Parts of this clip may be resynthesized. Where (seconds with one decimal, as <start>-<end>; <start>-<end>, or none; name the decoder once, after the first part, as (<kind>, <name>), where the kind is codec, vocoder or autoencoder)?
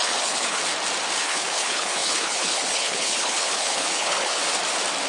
0.0-0.6 (codec, HILCodec); 1.2-4.4